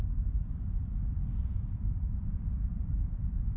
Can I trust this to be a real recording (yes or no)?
yes